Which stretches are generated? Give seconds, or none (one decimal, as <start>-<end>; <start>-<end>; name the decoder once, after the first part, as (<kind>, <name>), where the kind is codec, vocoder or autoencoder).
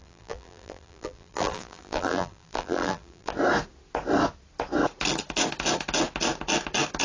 0.0-3.3 (vocoder, BigVGAN v2)